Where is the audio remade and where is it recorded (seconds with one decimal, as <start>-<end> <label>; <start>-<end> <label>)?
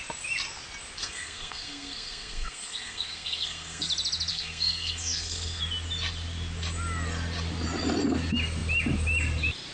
0.0-1.0 recorded; 1.0-3.9 remade; 3.9-4.3 recorded; 4.3-5.6 remade; 5.6-9.7 recorded